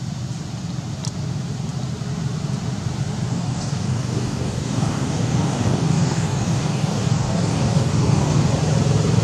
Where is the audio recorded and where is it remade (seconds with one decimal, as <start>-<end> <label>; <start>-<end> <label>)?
0.0-3.3 recorded; 3.3-8.5 remade; 8.5-9.2 recorded